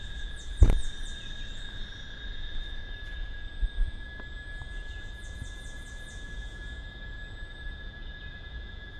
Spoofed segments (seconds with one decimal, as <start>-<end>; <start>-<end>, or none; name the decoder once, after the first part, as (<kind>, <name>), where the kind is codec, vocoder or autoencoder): 0.0-0.8 (vocoder, Vocos); 2.8-9.0